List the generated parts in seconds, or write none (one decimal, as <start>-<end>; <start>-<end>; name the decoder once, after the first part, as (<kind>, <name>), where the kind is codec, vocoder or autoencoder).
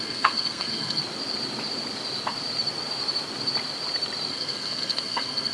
0.0-1.0 (codec, SNAC); 4.3-5.5